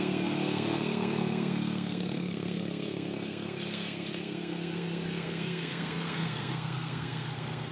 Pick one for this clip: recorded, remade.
remade